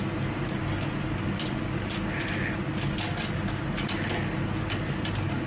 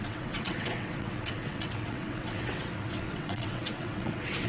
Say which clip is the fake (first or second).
second